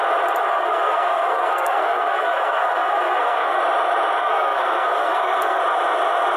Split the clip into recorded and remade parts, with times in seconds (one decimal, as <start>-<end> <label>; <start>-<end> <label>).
0.0-0.5 recorded; 0.5-3.6 remade; 3.6-4.2 recorded; 4.2-5.6 remade; 5.6-6.4 recorded